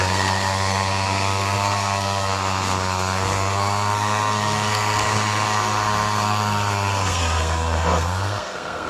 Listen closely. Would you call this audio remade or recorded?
remade